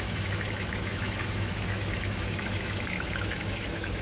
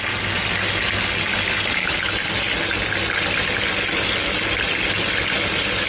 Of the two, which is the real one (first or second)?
second